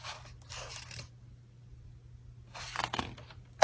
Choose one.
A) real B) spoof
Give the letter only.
A